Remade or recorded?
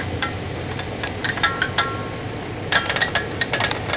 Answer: remade